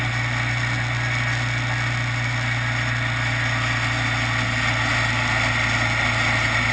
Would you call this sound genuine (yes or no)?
yes